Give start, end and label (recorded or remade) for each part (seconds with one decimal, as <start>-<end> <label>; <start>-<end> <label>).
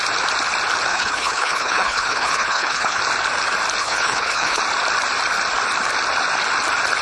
0.0-0.9 recorded; 0.9-3.0 remade; 3.0-3.8 recorded; 3.8-4.6 remade; 4.6-7.0 recorded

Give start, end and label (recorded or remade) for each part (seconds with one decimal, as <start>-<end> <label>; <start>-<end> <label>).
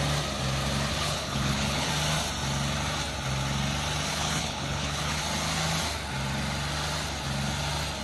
0.0-0.9 recorded; 0.9-1.9 remade; 1.9-4.1 recorded; 4.1-5.2 remade; 5.2-8.0 recorded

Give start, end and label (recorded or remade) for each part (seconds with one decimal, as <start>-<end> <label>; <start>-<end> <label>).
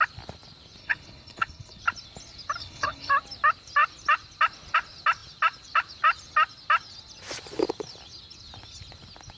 0.0-0.8 recorded; 0.8-1.8 remade; 1.8-2.6 recorded; 2.6-3.1 remade; 3.1-9.4 recorded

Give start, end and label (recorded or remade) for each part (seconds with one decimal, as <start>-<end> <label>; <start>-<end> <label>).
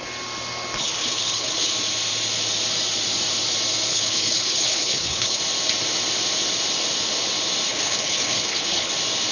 0.0-0.8 recorded; 0.8-1.7 remade; 1.7-3.9 recorded; 3.9-5.4 remade; 5.4-7.7 recorded; 7.7-8.9 remade; 8.9-9.3 recorded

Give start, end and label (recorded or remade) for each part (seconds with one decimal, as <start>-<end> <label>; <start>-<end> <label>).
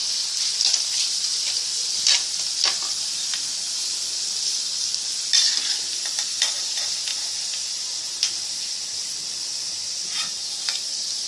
0.0-11.3 recorded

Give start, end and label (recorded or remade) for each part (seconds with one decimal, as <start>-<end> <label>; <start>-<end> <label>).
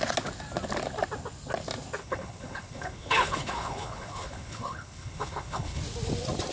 0.0-2.0 recorded; 2.0-5.8 remade; 5.8-6.5 recorded